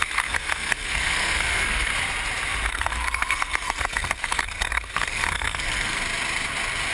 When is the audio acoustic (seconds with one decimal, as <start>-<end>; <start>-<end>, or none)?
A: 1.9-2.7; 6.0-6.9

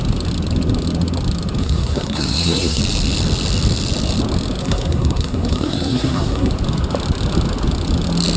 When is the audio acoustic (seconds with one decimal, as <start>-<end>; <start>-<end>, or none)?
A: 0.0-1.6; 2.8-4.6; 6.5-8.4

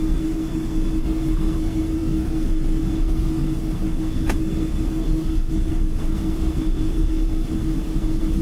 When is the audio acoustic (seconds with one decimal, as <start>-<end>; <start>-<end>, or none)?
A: none

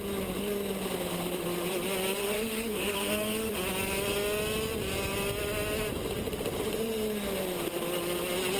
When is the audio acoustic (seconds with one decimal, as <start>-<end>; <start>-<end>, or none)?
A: 0.0-2.2; 3.5-8.6

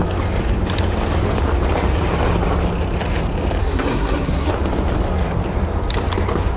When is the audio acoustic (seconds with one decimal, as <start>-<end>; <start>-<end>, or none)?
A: 0.0-3.6; 4.5-6.6

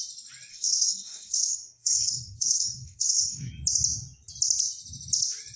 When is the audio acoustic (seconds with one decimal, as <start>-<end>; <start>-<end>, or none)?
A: 0.0-0.5; 3.5-5.6